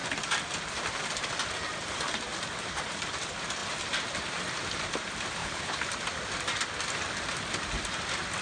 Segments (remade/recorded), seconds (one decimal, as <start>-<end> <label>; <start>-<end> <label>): 0.0-5.4 recorded; 5.4-5.9 remade; 5.9-8.4 recorded